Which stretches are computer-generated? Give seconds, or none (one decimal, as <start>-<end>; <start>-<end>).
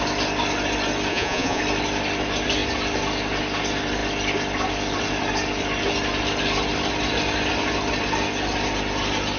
1.1-1.6